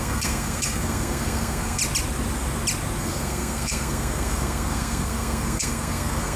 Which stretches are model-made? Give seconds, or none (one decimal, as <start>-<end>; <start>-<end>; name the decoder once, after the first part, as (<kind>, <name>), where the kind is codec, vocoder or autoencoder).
0.0-1.8 (codec, SNAC); 3.0-6.4